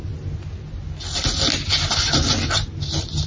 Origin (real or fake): real